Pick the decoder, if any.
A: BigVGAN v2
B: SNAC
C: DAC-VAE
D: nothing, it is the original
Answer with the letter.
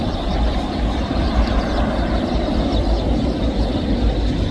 A